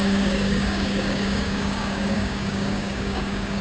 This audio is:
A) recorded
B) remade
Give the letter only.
B